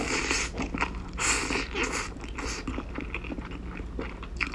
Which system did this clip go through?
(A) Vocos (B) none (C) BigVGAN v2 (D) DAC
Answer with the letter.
B